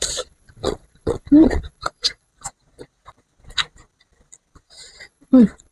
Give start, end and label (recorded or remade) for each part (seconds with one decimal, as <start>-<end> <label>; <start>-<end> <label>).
0.0-2.3 remade; 2.3-5.0 recorded; 5.0-5.7 remade